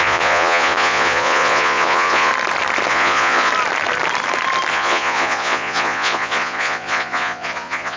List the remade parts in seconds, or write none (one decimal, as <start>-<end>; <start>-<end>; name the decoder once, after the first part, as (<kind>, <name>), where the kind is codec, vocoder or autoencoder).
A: 0.0-2.3 (vocoder, Vocos); 2.9-3.5; 4.7-8.0